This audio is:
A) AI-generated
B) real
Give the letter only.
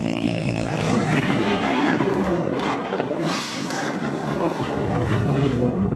A